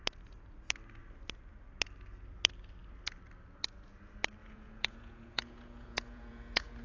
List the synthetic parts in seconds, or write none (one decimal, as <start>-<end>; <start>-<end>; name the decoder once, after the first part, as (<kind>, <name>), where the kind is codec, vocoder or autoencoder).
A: 4.4-6.8 (vocoder, Vocos)